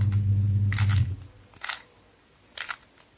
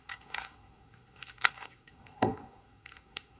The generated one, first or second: second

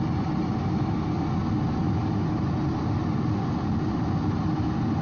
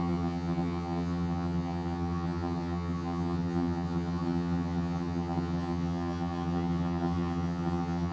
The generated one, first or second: second